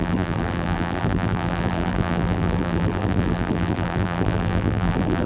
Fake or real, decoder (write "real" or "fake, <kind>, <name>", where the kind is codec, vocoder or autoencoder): fake, vocoder, BigVGAN v2